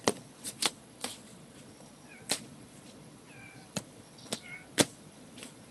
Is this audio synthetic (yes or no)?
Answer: yes